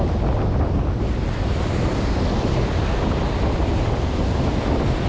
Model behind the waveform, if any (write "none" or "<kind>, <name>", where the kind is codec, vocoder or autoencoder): none